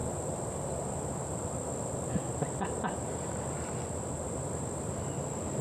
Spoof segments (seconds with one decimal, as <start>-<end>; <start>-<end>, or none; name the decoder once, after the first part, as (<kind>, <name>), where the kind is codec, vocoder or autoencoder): none